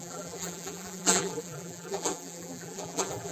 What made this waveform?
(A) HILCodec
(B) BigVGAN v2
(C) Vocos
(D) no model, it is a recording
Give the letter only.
B